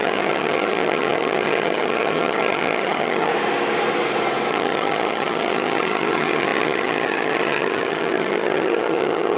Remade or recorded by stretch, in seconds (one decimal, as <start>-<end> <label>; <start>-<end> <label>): 0.0-3.3 remade; 3.3-4.5 recorded; 4.5-9.4 remade